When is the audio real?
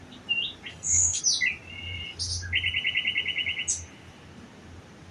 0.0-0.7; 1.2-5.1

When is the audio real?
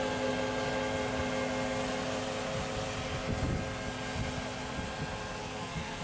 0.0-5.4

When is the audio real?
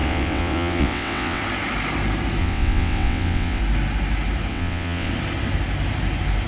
1.4-2.4; 3.6-4.5; 5.1-6.5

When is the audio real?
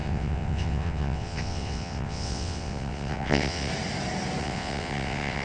3.7-4.4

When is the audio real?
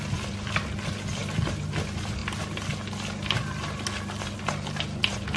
0.0-5.4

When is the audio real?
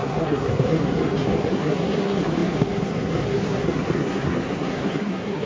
none